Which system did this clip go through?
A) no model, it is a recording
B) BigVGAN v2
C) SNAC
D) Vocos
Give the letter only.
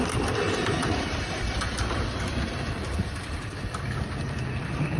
B